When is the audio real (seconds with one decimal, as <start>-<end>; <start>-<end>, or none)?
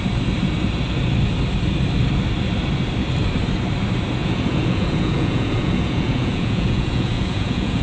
0.0-4.2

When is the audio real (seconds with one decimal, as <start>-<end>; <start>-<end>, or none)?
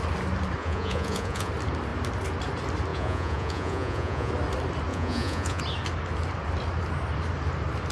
0.0-0.6; 1.5-2.9; 4.3-4.9; 5.6-7.9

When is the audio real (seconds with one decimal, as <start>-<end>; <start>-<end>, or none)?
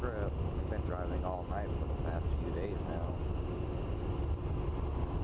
0.0-5.2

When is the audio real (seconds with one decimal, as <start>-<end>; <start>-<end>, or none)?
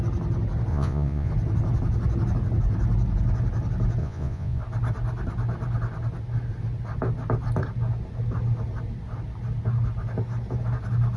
0.0-0.7; 1.3-4.0; 4.6-11.2